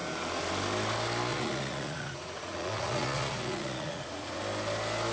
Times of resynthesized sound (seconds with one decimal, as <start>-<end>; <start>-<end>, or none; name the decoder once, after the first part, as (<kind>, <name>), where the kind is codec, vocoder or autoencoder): 1.3-4.4 (vocoder, Vocos)